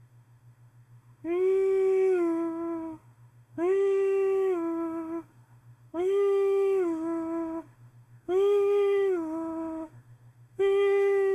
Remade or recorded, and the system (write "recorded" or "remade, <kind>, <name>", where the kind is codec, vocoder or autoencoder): remade, autoencoder, DAC-VAE